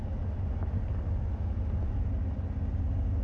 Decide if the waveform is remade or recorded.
recorded